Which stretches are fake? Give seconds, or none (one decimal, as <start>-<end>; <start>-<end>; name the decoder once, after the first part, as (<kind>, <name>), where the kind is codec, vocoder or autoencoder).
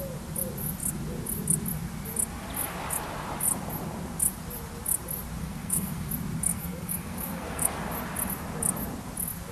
5.4-6.1 (codec, SNAC); 6.5-7.9